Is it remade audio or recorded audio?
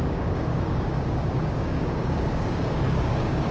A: remade